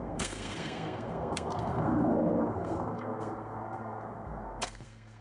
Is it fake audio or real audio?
fake